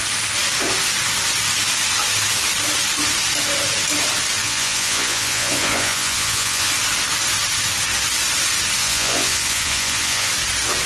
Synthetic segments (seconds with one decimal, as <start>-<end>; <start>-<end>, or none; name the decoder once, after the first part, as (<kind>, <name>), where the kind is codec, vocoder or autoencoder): 4.4-6.7 (vocoder, Vocos); 8.8-10.3